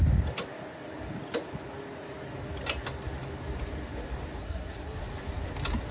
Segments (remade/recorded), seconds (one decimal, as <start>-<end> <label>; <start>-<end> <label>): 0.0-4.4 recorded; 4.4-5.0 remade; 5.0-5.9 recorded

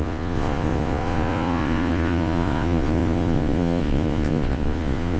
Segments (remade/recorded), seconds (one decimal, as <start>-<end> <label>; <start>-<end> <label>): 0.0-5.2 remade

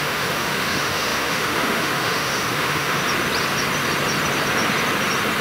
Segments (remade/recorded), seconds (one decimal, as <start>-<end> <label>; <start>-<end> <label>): 0.0-3.0 remade; 3.0-5.4 recorded

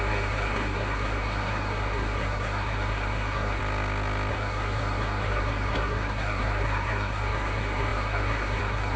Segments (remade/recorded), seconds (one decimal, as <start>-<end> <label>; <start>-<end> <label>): 0.0-3.6 remade; 3.6-4.3 recorded; 4.3-9.0 remade

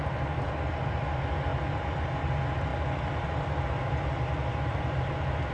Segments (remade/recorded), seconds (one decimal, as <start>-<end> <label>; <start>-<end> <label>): 0.0-1.5 recorded; 1.5-2.3 remade; 2.3-5.5 recorded